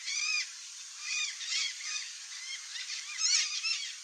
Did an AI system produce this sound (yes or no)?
yes